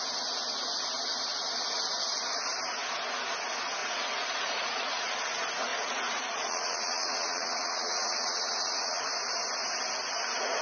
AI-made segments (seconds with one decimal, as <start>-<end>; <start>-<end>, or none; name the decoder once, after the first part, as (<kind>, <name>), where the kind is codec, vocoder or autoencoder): 3.8-5.1 (vocoder, Vocos); 5.7-9.0